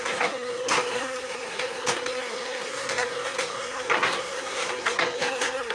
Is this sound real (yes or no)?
no